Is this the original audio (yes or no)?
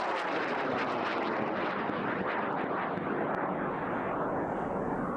yes